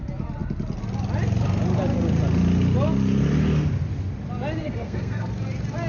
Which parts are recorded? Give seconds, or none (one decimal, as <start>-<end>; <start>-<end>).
0.0-4.6; 5.3-5.9